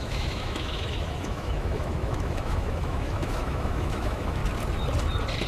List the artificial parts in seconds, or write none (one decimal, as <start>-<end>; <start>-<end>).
0.0-4.4

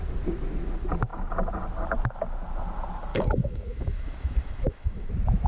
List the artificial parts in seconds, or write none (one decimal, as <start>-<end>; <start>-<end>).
3.1-5.1

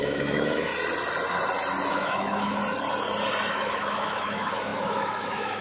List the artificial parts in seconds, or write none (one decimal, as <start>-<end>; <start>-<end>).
0.0-0.7; 1.9-2.6; 3.5-5.6

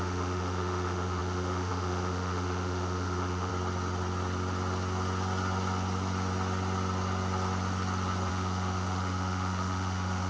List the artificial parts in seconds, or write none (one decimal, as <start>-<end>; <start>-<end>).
0.0-3.5; 8.3-10.3